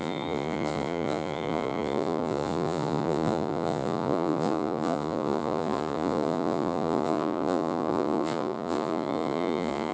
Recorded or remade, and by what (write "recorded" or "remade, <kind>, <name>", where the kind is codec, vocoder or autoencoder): remade, vocoder, Vocos